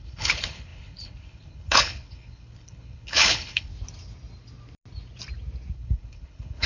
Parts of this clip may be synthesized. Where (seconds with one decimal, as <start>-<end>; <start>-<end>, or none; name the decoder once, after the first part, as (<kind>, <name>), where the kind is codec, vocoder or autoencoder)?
0.0-3.7 (codec, HILCodec); 5.7-6.7